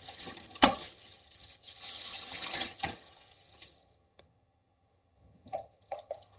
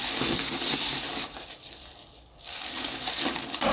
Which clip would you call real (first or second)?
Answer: second